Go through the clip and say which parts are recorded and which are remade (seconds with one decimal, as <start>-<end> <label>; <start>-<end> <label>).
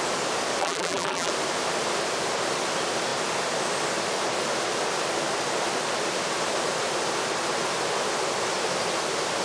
0.0-0.6 recorded; 0.6-1.3 remade; 1.3-9.4 recorded